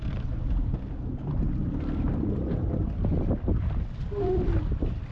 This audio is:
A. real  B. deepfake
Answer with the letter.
A